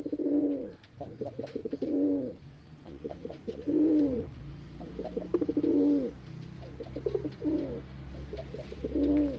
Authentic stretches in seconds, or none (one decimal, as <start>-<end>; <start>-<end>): 0.0-0.4; 1.2-1.6; 4.4-9.4